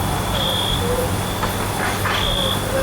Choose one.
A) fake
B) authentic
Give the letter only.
B